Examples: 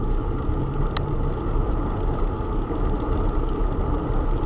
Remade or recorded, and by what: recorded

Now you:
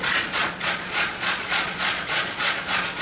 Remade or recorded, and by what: remade, vocoder, Vocos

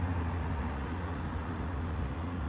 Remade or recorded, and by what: remade, vocoder, Vocos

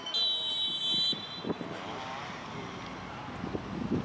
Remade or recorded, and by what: recorded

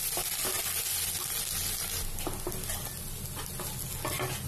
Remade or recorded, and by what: recorded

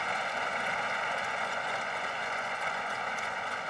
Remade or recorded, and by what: remade, vocoder, Vocos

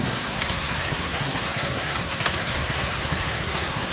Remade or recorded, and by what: remade, codec, SNAC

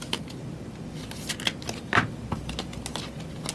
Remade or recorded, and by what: recorded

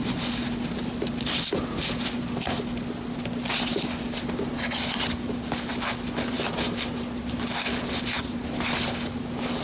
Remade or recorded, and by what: recorded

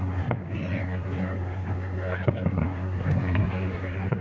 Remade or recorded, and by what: remade, codec, SNAC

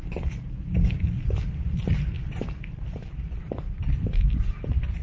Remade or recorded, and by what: recorded